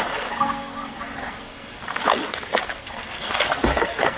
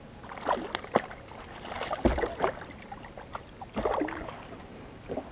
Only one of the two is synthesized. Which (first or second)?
first